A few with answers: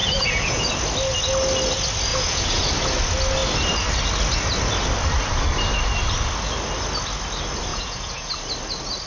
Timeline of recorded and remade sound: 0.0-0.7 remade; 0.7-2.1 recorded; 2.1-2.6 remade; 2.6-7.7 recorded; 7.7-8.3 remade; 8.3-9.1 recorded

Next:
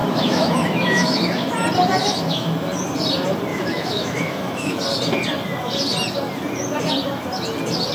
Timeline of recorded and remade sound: 0.0-1.5 remade; 1.5-2.0 recorded; 2.0-2.7 remade; 2.7-3.5 recorded; 3.5-4.8 remade; 4.8-7.9 recorded

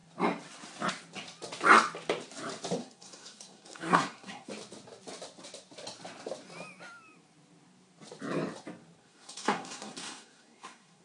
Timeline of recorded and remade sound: 0.0-2.8 recorded; 2.8-4.5 remade; 4.5-9.0 recorded; 9.0-11.0 remade

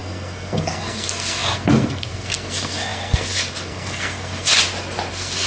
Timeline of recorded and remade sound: 0.0-4.5 remade; 4.5-5.1 recorded; 5.1-5.5 remade

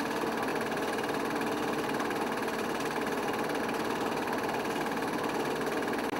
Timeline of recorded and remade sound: 0.0-6.2 recorded

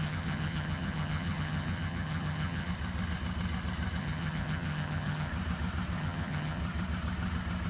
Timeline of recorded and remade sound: 0.0-2.7 remade; 2.7-4.0 recorded; 4.0-5.3 remade; 5.3-6.0 recorded; 6.0-6.6 remade; 6.6-7.7 recorded